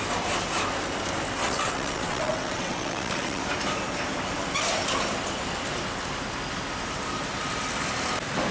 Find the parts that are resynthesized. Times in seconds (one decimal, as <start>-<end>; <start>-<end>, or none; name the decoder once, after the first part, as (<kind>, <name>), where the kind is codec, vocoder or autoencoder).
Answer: 1.4-3.4 (vocoder, WaveNeXt)